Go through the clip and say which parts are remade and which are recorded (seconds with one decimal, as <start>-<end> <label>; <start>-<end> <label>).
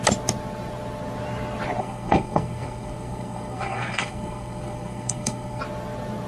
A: 0.0-1.8 recorded; 1.8-5.6 remade; 5.6-6.3 recorded